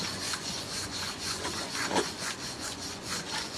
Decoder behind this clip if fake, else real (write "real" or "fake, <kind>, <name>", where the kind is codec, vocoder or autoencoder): fake, vocoder, Vocos